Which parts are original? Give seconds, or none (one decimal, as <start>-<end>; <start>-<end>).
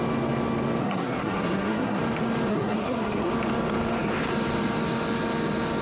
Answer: 0.0-0.8; 2.0-2.5; 3.3-5.8